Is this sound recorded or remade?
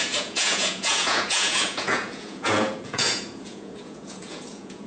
remade